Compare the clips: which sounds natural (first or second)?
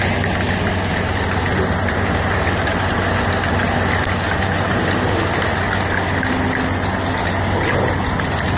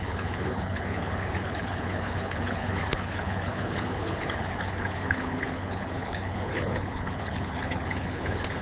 first